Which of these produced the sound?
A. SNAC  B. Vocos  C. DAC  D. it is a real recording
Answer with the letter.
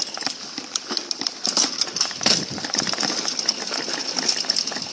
D